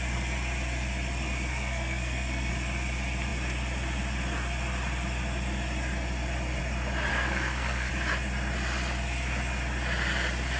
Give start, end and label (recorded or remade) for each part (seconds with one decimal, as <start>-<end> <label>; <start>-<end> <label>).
0.0-1.5 recorded; 1.5-2.5 remade; 2.5-7.1 recorded; 7.1-7.9 remade; 7.9-10.6 recorded